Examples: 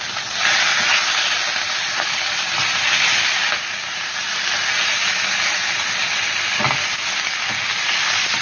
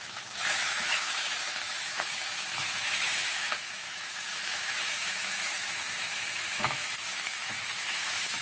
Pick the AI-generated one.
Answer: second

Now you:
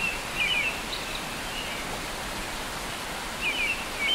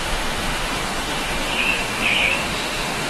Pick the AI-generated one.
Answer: second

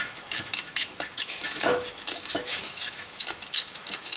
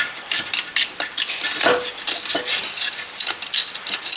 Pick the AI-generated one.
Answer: first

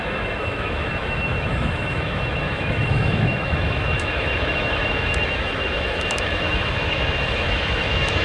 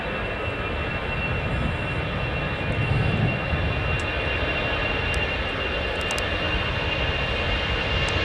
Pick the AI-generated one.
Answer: first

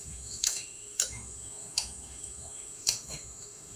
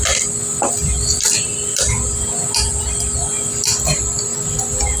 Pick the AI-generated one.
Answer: first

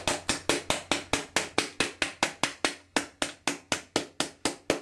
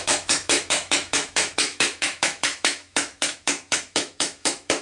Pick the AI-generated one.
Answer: second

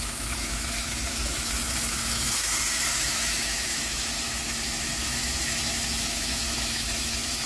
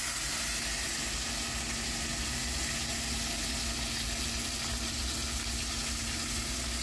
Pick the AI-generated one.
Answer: first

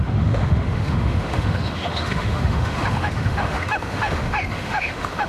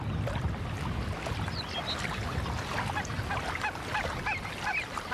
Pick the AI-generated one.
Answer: first